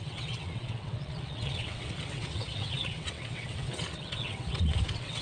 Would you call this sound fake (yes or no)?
yes